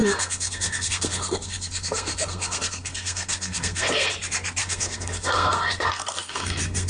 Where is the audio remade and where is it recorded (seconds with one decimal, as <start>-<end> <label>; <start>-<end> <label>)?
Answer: 0.0-4.1 remade; 4.1-4.6 recorded; 4.6-6.9 remade